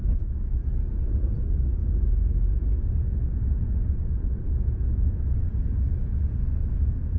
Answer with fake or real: fake